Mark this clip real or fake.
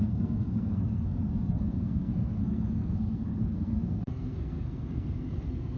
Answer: fake